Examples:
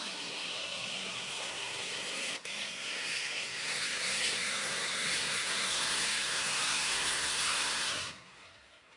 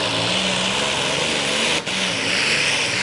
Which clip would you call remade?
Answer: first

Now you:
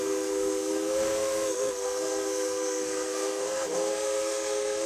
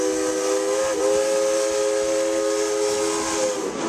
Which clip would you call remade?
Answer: first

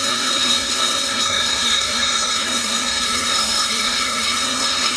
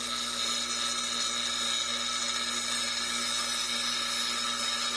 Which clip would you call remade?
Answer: first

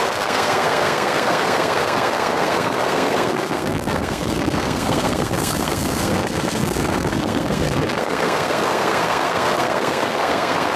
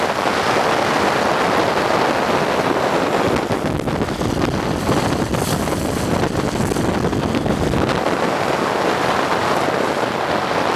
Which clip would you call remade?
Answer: first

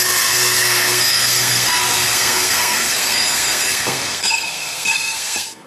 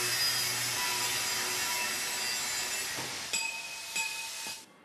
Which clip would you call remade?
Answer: first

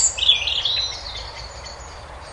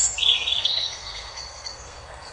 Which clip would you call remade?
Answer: second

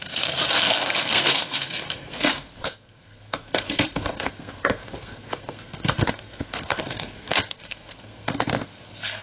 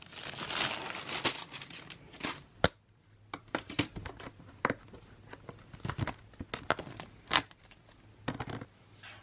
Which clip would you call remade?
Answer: first